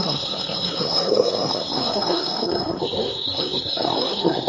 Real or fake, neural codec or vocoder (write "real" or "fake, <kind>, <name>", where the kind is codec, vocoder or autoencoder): fake, codec, SNAC